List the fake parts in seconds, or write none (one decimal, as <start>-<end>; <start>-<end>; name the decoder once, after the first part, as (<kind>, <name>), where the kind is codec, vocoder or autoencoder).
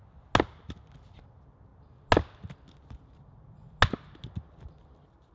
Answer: none